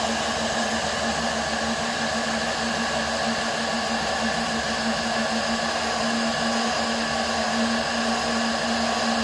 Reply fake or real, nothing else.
real